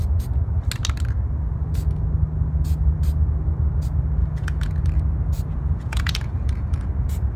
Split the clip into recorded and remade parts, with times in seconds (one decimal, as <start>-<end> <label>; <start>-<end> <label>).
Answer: 0.0-4.2 recorded; 4.2-4.8 remade; 4.8-5.5 recorded; 5.5-6.9 remade; 6.9-7.4 recorded

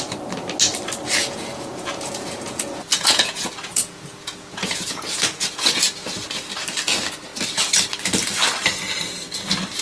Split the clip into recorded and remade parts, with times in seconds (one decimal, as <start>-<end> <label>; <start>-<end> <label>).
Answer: 0.0-1.2 recorded; 1.2-5.8 remade; 5.8-9.8 recorded

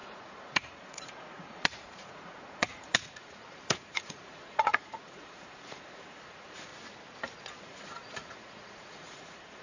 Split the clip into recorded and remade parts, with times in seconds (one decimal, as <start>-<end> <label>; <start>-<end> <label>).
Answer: 0.0-6.7 remade; 6.7-7.6 recorded; 7.6-9.6 remade